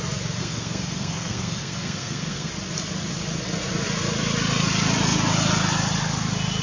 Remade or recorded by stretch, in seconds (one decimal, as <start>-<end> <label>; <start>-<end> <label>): 0.0-0.4 recorded; 0.4-2.5 remade; 2.5-6.6 recorded